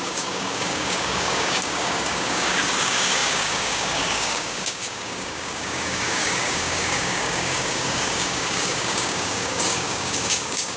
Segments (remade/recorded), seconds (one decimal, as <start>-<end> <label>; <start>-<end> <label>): 0.0-10.8 remade